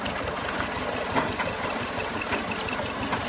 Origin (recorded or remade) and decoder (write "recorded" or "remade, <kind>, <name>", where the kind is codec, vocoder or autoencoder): recorded